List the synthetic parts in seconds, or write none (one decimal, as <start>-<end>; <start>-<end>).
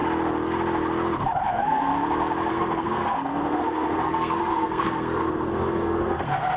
1.5-1.9; 2.5-6.6